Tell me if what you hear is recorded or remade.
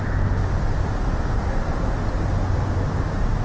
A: recorded